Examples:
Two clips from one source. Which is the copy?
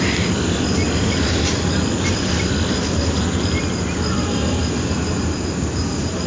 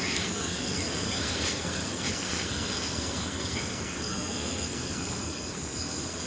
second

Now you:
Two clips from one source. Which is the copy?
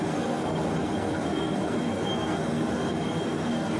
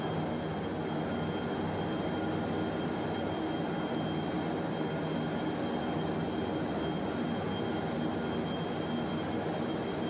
first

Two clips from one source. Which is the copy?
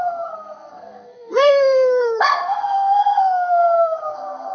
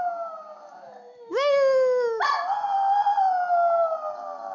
first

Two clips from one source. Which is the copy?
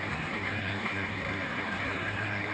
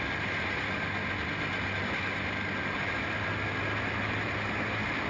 first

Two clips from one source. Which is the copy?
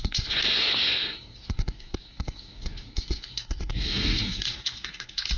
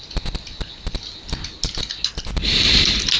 first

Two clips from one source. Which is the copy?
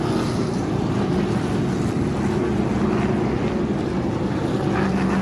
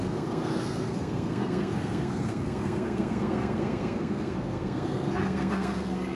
second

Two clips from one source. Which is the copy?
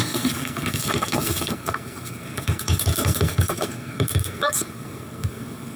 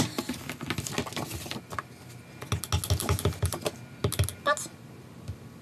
first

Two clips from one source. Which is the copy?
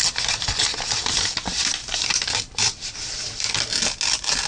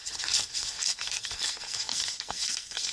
second